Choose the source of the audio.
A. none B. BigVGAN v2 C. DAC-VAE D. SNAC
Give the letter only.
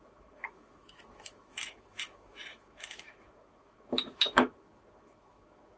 C